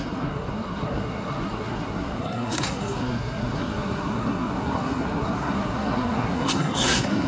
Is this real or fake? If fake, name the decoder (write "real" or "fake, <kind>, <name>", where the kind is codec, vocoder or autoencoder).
fake, codec, SNAC